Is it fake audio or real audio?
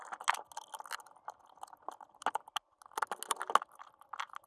real